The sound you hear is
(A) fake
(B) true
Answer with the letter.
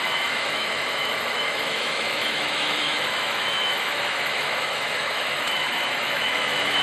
A